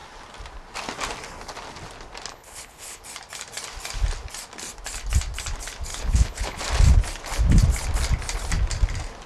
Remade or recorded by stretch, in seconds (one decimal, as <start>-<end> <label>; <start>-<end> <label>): 0.0-2.3 recorded; 2.3-3.0 remade; 3.0-5.9 recorded; 5.9-6.6 remade; 6.6-9.3 recorded